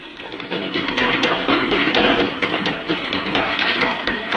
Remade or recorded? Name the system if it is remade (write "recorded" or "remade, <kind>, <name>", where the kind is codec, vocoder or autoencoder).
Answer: remade, codec, SNAC